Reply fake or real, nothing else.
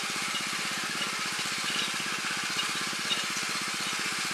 real